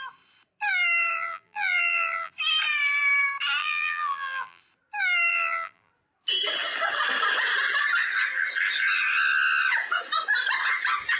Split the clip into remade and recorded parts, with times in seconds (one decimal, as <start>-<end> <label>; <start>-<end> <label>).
0.0-1.1 recorded; 1.1-2.3 remade; 2.3-3.6 recorded; 3.6-4.6 remade; 4.6-5.3 recorded; 5.3-5.9 remade; 5.9-11.2 recorded